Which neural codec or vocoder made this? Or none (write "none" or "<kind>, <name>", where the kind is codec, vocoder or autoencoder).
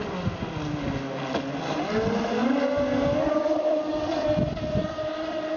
none